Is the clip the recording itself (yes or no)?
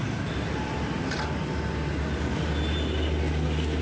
yes